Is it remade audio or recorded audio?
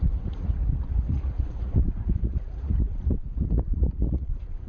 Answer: remade